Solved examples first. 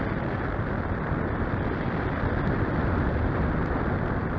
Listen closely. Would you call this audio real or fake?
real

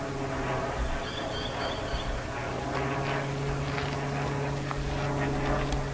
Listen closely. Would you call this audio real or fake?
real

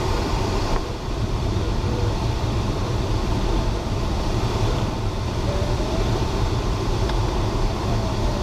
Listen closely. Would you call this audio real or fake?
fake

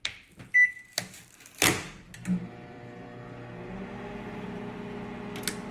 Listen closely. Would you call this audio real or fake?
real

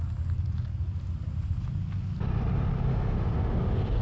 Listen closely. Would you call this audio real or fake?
real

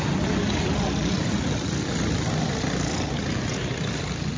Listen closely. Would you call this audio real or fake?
real